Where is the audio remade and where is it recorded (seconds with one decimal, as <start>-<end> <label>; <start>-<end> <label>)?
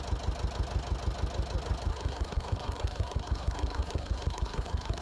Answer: 0.0-1.9 recorded; 1.9-5.0 remade